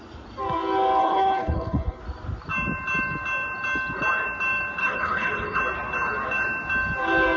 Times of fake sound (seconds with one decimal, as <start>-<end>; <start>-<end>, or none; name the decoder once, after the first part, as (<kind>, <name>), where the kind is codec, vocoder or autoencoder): 1.0-2.0 (codec, HILCodec); 4.8-5.6

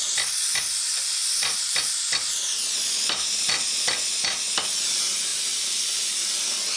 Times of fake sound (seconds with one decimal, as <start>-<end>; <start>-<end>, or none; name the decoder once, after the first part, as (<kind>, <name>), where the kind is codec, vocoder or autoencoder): 1.2-4.0 (vocoder, BigVGAN v2)

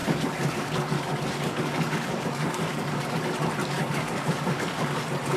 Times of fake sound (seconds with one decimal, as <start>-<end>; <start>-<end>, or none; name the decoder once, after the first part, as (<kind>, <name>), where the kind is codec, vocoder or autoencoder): 0.0-3.2 (codec, DAC); 3.6-5.0

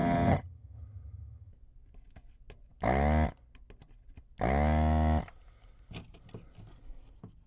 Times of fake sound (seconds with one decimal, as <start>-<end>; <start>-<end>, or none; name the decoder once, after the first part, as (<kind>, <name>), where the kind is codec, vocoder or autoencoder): 0.0-1.5 (vocoder, HiFi-GAN)

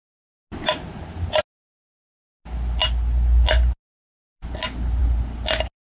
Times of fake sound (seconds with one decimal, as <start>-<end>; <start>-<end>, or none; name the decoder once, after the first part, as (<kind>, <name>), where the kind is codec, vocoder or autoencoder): none

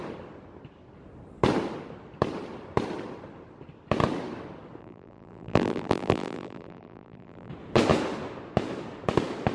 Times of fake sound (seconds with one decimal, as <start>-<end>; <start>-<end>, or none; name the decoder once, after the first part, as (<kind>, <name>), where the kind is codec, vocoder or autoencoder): 4.8-7.5 (vocoder, BigVGAN v2)

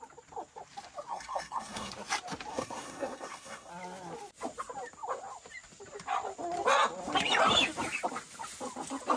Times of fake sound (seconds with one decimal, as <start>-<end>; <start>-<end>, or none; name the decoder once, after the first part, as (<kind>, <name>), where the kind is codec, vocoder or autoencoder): 1.1-1.9 (codec, SNAC); 2.5-3.7

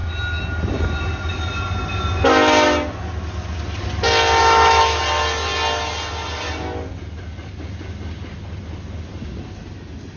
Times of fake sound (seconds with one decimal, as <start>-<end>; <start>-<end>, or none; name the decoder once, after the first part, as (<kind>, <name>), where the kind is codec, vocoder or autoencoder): 4.4-5.0 (autoencoder, DAC-VAE)